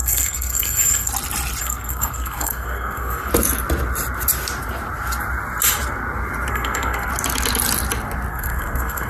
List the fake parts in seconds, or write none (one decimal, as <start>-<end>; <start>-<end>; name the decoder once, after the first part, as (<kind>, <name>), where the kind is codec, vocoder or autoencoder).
0.0-1.1 (codec, SNAC); 1.6-3.3; 6.5-7.1; 8.3-9.1